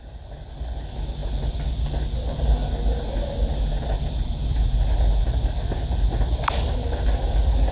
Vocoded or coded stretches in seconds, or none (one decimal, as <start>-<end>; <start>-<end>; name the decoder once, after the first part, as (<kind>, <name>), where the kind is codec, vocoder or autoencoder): none